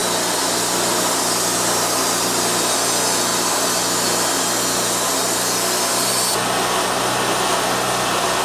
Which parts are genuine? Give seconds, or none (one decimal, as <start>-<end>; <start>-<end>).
0.0-8.4